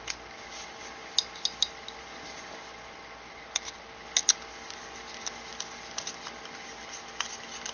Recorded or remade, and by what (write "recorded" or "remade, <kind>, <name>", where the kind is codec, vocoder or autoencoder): recorded